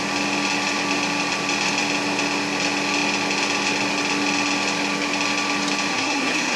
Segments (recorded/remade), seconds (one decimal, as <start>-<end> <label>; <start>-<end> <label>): 0.0-5.9 recorded; 5.9-6.6 remade